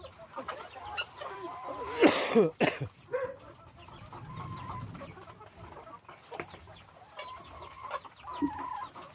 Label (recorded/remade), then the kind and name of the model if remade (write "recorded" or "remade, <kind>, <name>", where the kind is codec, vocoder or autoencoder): recorded